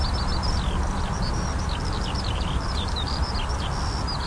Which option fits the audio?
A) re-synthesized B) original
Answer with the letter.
B